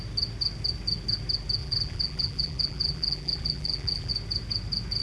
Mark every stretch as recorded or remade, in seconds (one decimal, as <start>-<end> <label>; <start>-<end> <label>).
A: 0.0-1.6 recorded; 1.6-4.1 remade; 4.1-5.0 recorded